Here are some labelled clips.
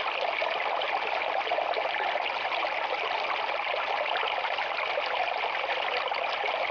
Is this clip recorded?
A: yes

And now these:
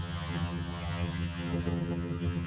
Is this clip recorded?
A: no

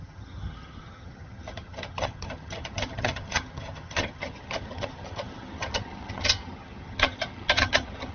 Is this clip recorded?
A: no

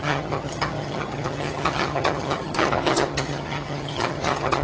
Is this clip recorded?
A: no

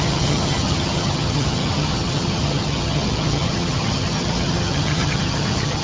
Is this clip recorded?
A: no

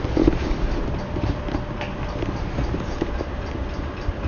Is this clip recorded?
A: yes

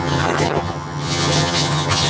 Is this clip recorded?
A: no